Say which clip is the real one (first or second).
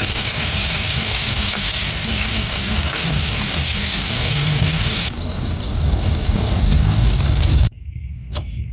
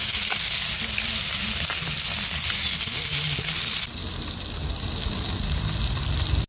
second